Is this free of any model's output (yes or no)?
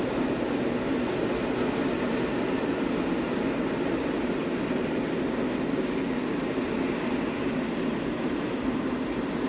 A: yes